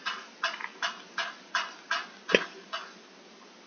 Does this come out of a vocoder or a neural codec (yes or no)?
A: no